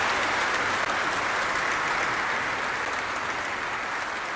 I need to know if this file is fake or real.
real